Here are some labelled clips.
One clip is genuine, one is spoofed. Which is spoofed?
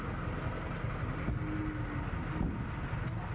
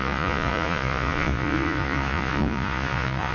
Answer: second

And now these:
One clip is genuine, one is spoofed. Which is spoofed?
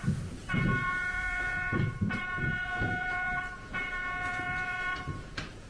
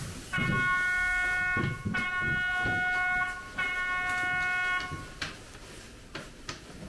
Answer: first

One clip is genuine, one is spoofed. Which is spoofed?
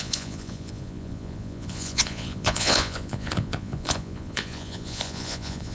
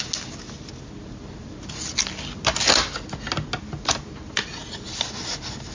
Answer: first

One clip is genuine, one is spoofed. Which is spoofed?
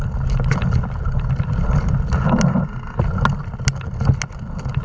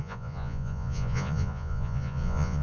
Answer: second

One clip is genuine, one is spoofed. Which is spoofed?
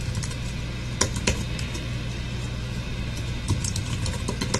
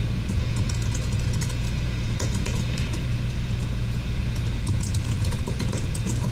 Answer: second